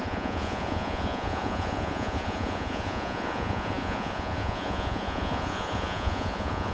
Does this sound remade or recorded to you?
remade